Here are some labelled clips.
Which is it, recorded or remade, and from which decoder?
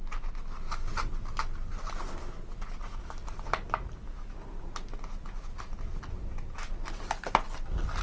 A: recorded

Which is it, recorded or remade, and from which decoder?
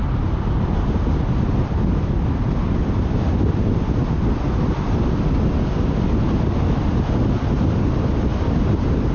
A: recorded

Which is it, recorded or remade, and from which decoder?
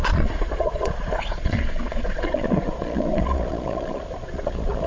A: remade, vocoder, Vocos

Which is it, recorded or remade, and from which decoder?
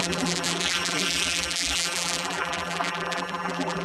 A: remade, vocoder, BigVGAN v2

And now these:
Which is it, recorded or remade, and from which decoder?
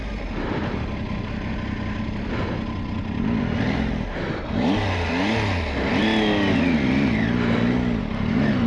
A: recorded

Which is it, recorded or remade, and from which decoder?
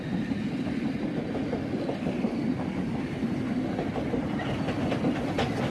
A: recorded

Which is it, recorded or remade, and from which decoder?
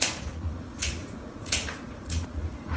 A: remade, vocoder, Vocos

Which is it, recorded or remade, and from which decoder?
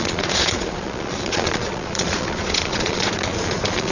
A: remade, vocoder, Vocos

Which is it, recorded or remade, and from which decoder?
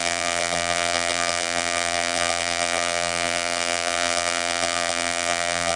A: remade, vocoder, BigVGAN v2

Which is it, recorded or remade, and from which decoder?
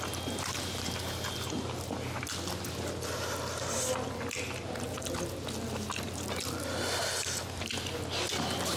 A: recorded